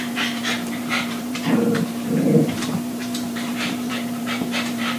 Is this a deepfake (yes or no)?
yes